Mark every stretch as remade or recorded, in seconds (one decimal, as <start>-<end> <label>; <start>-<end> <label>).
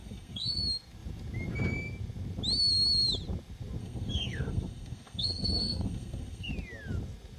0.0-0.6 remade; 0.6-3.8 recorded; 3.8-6.5 remade; 6.5-7.4 recorded